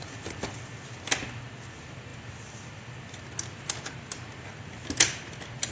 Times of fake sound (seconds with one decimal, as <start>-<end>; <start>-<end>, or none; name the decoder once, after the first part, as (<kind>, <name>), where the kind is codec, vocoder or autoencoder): none